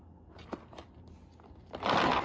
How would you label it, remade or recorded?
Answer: recorded